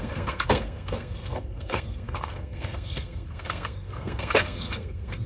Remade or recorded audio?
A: remade